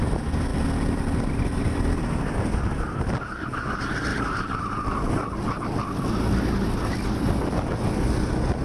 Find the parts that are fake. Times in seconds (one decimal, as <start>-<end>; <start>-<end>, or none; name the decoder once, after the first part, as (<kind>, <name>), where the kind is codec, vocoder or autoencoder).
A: 4.1-5.1 (vocoder, BigVGAN v2)